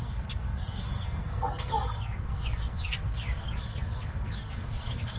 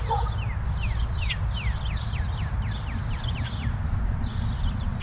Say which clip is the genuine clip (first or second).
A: second